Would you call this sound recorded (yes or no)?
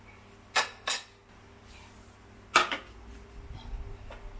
yes